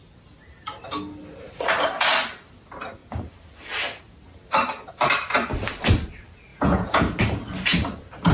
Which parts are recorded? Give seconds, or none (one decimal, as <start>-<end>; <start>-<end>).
0.0-6.5; 7.2-8.3